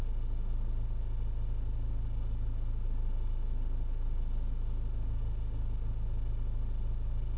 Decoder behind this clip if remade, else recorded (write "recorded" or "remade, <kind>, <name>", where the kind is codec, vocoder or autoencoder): recorded